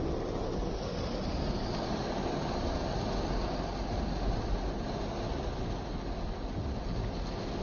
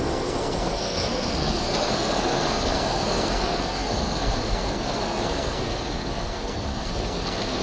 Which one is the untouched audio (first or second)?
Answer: first